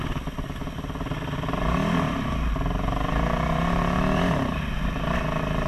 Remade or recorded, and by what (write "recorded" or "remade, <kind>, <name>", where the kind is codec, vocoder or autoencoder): recorded